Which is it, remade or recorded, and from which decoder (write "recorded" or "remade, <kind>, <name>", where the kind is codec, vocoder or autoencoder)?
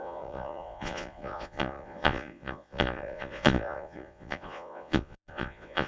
remade, vocoder, Vocos